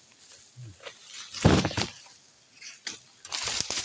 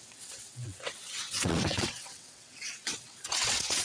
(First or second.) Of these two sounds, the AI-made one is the second